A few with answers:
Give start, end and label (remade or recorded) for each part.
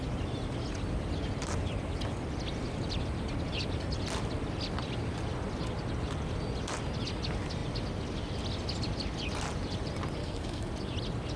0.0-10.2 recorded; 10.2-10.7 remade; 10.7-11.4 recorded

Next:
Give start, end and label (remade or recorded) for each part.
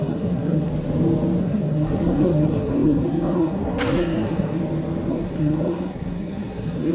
0.0-0.7 remade; 0.7-1.4 recorded; 1.4-4.6 remade; 4.6-5.1 recorded; 5.1-6.9 remade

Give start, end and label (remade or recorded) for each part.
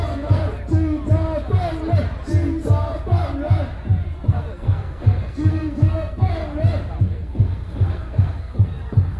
0.0-0.4 remade; 0.4-4.3 recorded; 4.3-6.4 remade; 6.4-7.0 recorded; 7.0-9.2 remade